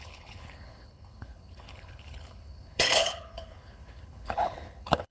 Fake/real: fake